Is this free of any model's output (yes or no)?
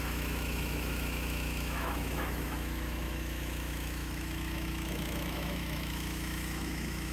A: no